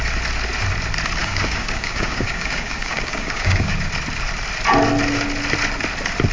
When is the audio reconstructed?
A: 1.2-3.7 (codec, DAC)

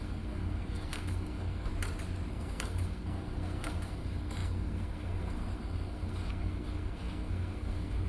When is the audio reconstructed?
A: 0.0-1.7 (codec, SNAC); 2.3-8.1

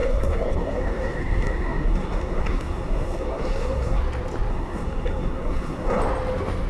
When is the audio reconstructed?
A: 0.0-4.0 (codec, SNAC); 4.5-6.0

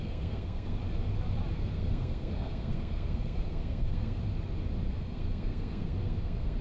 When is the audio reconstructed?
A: 0.0-0.8 (codec, SNAC); 1.5-4.2; 4.9-6.6

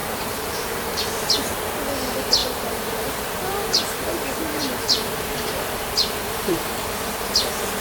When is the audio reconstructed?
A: 0.0-1.1 (vocoder, BigVGAN v2); 2.4-7.1

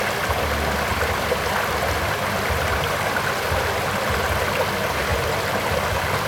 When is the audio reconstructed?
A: 0.9-4.4 (vocoder, BigVGAN v2); 5.1-6.3

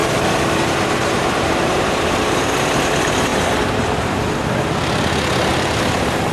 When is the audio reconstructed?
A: 0.0-2.5 (vocoder, BigVGAN v2); 3.3-3.8; 5.5-6.3